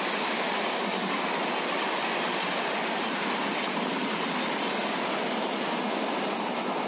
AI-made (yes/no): no